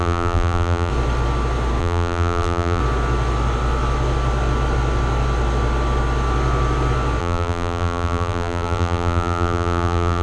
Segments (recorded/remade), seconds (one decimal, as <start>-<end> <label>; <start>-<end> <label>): 0.0-0.9 remade; 0.9-1.8 recorded; 1.8-2.8 remade; 2.8-7.2 recorded; 7.2-10.2 remade